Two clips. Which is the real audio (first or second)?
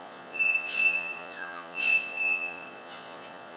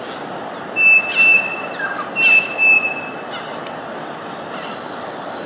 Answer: second